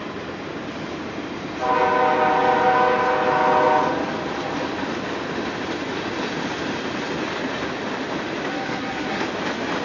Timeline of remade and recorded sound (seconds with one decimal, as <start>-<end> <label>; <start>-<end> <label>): 0.0-8.5 recorded; 8.5-9.2 remade; 9.2-9.8 recorded